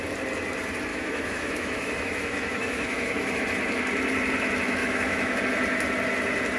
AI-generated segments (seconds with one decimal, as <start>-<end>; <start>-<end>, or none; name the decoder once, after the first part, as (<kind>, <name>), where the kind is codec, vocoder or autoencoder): 0.9-3.4 (autoencoder, DAC-VAE); 4.8-5.4